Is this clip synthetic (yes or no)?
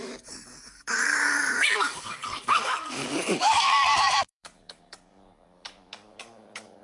yes